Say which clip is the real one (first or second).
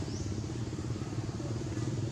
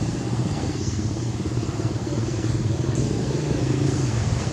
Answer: first